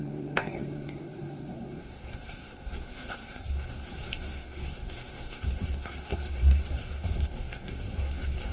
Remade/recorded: remade